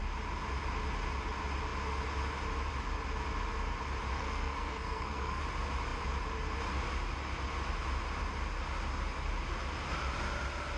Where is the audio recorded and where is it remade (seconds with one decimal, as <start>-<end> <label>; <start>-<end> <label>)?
0.0-4.1 recorded; 4.1-5.4 remade; 5.4-10.8 recorded